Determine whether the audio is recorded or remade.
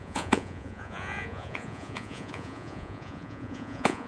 remade